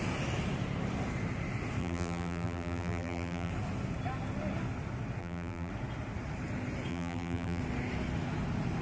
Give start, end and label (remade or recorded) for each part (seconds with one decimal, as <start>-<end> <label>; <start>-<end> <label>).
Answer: 0.0-1.8 recorded; 1.8-3.5 remade; 3.5-5.2 recorded; 5.2-5.7 remade; 5.7-6.9 recorded; 6.9-7.6 remade; 7.6-8.8 recorded